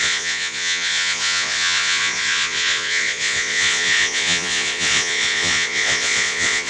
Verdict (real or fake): fake